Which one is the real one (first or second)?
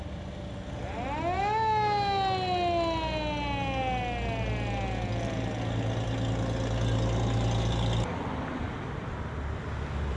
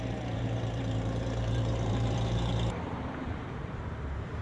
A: first